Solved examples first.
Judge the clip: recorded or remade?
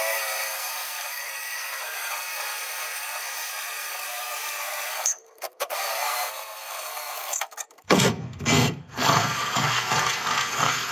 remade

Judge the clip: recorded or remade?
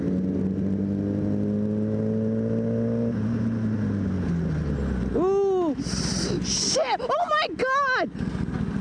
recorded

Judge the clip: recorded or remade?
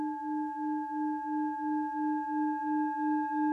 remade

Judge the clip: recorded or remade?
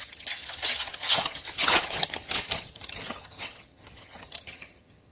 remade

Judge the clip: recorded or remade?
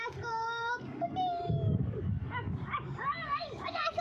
remade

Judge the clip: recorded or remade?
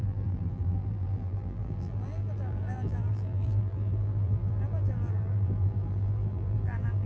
remade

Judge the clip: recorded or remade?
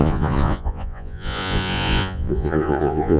remade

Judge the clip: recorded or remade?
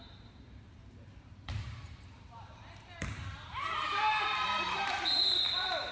remade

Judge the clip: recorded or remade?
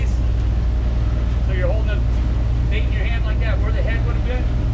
recorded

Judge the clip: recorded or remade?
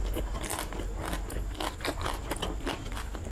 recorded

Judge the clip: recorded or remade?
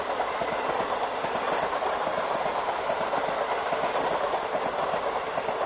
recorded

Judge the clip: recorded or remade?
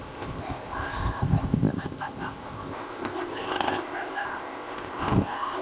remade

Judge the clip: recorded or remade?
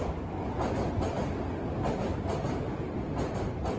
recorded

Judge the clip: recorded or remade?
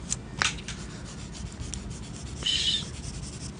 recorded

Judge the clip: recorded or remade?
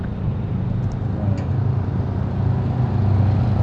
recorded